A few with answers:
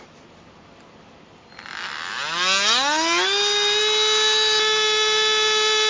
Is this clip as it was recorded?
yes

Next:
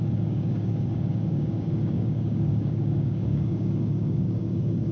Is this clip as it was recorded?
no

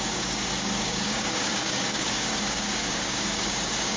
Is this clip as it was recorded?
no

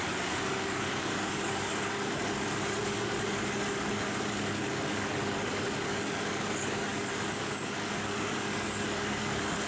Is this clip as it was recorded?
no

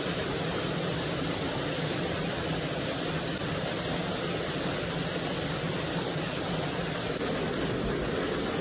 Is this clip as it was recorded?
yes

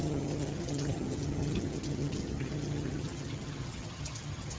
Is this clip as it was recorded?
no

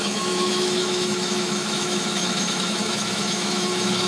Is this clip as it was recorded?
no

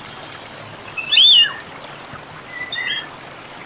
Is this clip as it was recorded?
yes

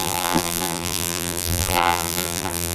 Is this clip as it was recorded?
no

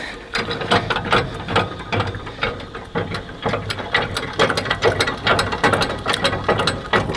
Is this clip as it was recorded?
yes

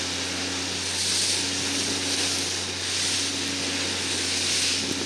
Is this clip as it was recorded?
yes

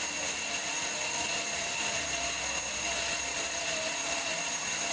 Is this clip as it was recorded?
yes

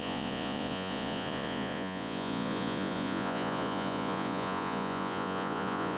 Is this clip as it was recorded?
no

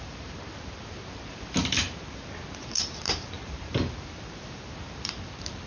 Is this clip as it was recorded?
no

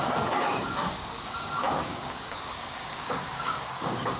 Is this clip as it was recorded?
no